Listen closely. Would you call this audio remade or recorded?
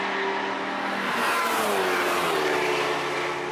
recorded